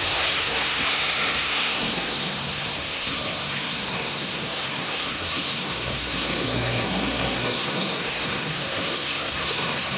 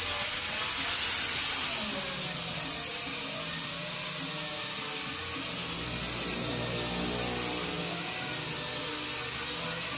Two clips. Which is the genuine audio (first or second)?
second